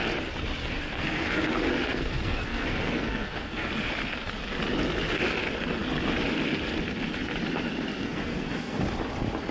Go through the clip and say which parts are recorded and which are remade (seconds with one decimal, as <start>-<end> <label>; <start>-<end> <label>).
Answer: 0.0-0.6 recorded; 0.6-3.7 remade; 3.7-8.0 recorded; 8.0-8.8 remade; 8.8-9.5 recorded